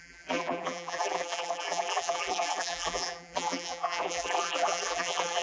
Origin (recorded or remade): remade